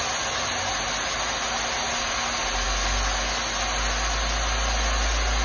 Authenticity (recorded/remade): recorded